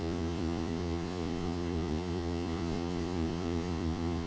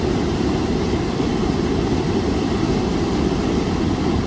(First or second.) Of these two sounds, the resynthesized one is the first